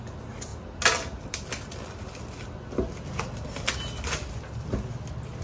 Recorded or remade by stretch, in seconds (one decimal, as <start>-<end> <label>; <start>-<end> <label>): 0.0-5.4 recorded